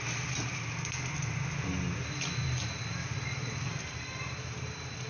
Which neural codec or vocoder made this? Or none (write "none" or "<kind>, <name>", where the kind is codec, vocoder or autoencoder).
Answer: none